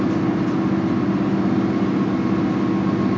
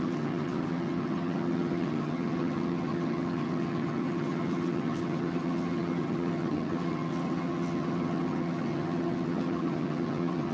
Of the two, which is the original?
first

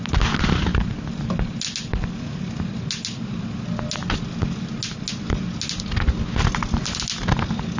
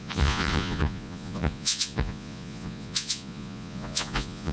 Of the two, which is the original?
first